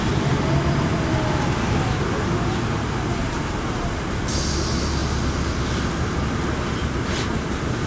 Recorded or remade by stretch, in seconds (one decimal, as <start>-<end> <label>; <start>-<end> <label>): 0.0-3.2 recorded; 3.2-4.2 remade; 4.2-7.9 recorded